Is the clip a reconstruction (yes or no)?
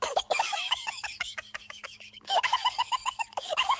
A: yes